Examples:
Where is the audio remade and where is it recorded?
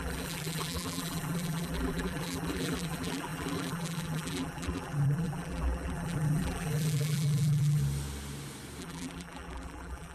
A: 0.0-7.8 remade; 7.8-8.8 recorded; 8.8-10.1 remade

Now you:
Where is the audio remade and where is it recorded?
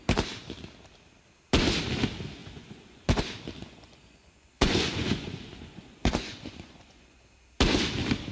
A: 0.0-2.4 recorded; 2.4-3.2 remade; 3.2-3.6 recorded; 3.6-7.2 remade; 7.2-8.3 recorded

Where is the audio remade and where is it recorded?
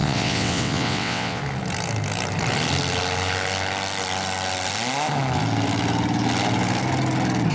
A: 0.0-1.4 remade; 1.4-7.5 recorded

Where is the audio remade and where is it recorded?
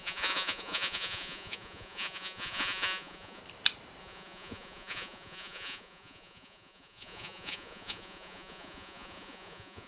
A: 0.0-3.4 remade; 3.4-4.0 recorded; 4.0-9.9 remade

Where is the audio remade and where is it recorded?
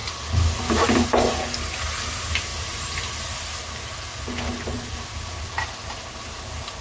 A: 0.0-6.8 recorded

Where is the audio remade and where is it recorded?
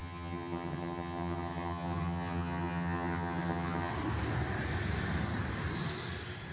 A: 0.0-3.9 remade; 3.9-6.5 recorded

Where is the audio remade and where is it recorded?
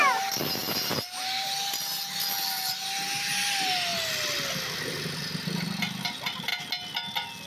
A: 0.0-7.5 recorded